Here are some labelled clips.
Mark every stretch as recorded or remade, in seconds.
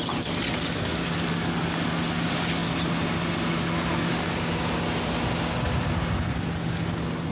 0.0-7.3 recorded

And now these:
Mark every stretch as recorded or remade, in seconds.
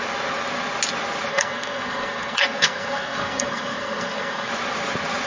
0.0-1.3 recorded; 1.3-4.5 remade; 4.5-5.3 recorded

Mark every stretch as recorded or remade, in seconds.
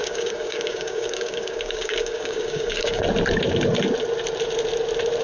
0.0-3.0 remade; 3.0-5.2 recorded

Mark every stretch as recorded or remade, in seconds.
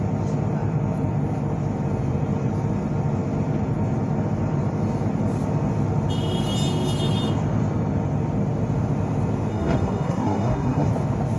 0.0-9.5 recorded; 9.5-10.9 remade; 10.9-11.4 recorded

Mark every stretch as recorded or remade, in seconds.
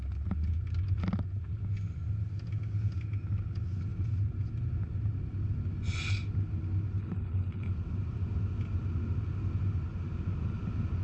0.0-7.0 recorded; 7.0-7.7 remade; 7.7-11.0 recorded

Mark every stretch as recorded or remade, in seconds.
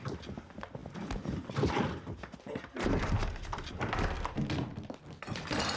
0.0-5.8 recorded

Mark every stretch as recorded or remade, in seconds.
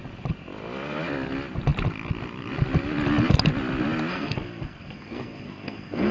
0.0-4.1 recorded; 4.1-6.1 remade